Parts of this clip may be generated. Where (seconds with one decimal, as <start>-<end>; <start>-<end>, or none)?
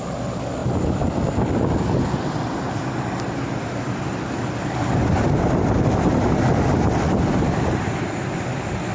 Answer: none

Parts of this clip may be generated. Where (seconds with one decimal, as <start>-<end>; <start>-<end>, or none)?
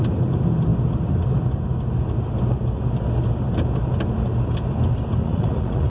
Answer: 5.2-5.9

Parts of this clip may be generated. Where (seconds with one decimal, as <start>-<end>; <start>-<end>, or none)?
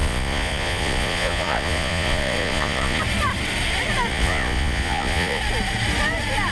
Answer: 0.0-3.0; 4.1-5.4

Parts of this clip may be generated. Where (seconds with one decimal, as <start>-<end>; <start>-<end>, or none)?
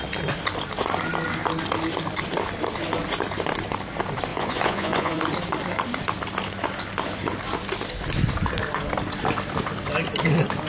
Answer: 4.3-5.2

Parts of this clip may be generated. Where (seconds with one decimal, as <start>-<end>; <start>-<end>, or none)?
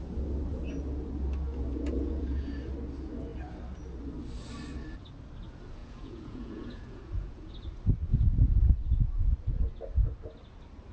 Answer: 1.7-2.5; 5.8-7.5; 8.1-9.0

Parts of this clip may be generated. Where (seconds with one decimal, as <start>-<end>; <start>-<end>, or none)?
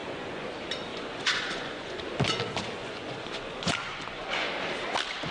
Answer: 0.0-0.5; 0.9-2.0; 2.8-4.5